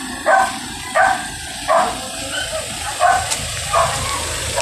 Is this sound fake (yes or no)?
no